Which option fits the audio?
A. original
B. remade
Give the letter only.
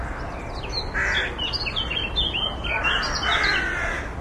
A